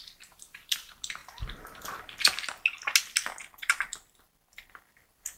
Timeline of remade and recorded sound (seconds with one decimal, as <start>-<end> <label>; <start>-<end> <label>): 0.0-1.2 remade; 1.2-3.8 recorded; 3.8-5.4 remade